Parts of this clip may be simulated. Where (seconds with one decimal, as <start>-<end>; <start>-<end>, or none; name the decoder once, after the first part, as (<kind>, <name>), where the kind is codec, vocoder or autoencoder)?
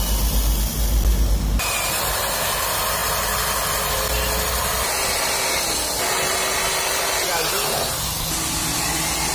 none